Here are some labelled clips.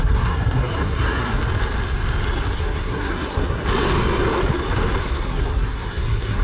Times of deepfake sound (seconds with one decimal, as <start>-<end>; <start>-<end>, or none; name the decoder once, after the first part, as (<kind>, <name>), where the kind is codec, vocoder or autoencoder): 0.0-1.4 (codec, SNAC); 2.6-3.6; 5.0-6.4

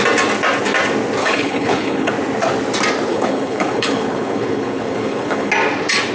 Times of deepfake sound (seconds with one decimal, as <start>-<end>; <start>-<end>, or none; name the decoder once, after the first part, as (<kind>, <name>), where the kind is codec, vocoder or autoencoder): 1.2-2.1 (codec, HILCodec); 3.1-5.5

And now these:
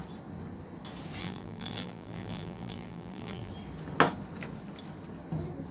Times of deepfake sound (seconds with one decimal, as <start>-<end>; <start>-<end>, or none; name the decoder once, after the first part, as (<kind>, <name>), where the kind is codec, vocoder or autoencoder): 1.2-3.5 (vocoder, BigVGAN v2)

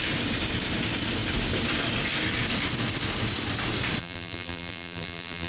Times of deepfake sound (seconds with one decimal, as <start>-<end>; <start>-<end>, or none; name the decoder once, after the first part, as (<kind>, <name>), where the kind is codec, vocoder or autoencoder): 4.0-5.5 (vocoder, BigVGAN v2)

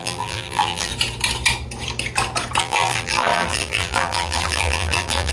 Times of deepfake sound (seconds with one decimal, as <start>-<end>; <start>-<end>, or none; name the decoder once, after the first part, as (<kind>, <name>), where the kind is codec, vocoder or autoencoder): 0.0-0.9 (vocoder, BigVGAN v2); 2.6-5.3

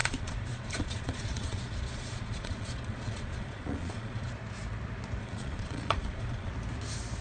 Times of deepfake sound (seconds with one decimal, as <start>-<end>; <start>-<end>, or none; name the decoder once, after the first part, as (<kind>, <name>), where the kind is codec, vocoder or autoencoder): 0.0-4.3 (vocoder, Vocos); 5.2-6.5